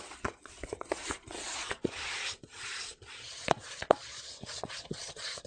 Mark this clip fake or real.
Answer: fake